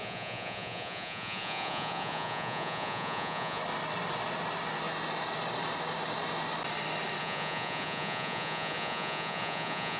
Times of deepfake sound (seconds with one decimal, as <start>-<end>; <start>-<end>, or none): 0.0-3.6; 7.2-10.0